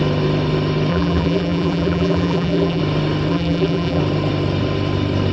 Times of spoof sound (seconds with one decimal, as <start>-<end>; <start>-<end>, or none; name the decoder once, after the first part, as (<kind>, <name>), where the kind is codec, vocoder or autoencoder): 0.9-2.8 (vocoder, BigVGAN v2); 3.3-4.0